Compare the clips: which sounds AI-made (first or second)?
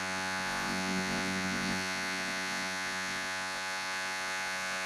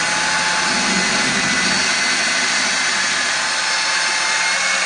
first